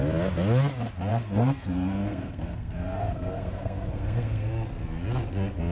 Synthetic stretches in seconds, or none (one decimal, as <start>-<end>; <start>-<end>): 1.1-4.5